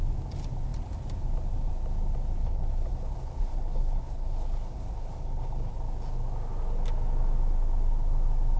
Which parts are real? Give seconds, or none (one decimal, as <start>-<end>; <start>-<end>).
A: 0.0-2.4; 5.7-8.6